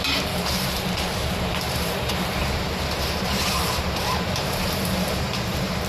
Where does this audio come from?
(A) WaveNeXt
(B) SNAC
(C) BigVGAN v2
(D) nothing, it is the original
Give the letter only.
C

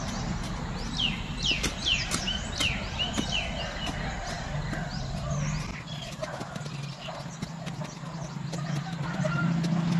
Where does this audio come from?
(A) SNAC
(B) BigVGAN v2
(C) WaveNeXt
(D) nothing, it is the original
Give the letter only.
D